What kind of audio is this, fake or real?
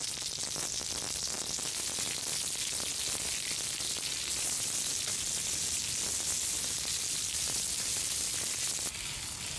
real